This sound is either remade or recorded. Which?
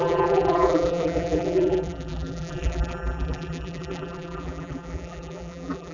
remade